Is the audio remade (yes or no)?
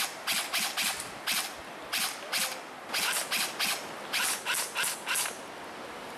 no